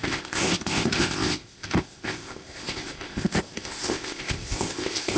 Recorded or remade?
remade